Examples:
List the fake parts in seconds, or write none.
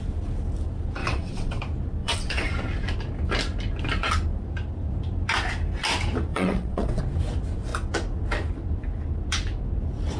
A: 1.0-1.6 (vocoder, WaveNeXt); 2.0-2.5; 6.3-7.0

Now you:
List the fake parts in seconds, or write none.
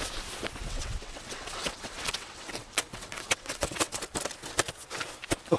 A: 0.6-4.0 (vocoder, WaveNeXt)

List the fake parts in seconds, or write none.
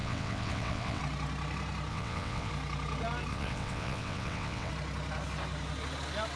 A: 0.0-1.0 (vocoder, WaveNeXt); 1.9-2.5; 3.3-4.7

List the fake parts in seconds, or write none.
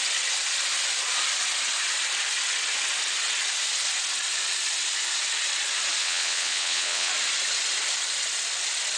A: 6.0-7.1 (vocoder, WaveNeXt)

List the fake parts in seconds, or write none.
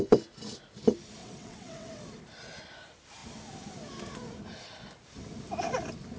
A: 1.2-2.0 (vocoder, WaveNeXt)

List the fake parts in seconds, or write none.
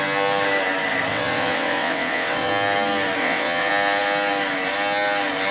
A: 1.1-2.5 (vocoder, WaveNeXt); 3.2-3.7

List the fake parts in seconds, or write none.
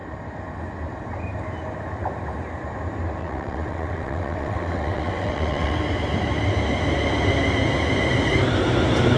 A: 3.2-5.8 (vocoder, WaveNeXt)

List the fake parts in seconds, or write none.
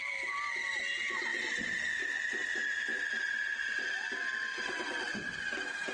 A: 4.5-5.4 (vocoder, WaveNeXt)